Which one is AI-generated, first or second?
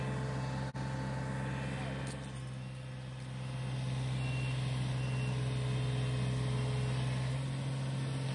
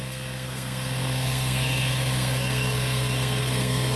second